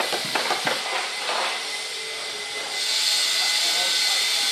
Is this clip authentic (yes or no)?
yes